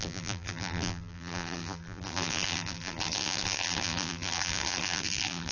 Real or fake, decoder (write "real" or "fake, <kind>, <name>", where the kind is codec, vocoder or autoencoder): fake, vocoder, BigVGAN v2